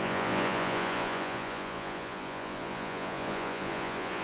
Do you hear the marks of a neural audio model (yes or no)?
yes